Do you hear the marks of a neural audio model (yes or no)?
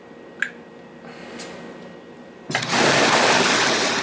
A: no